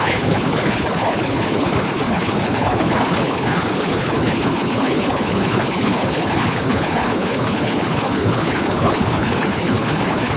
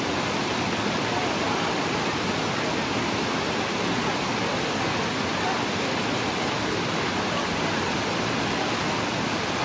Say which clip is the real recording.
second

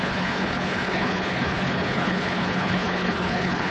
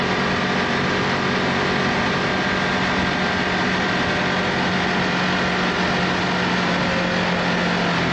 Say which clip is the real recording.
second